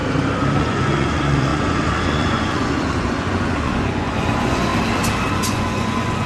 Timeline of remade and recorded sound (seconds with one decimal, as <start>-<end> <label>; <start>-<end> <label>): 0.0-0.6 recorded; 0.6-4.7 remade; 4.7-5.3 recorded; 5.3-6.3 remade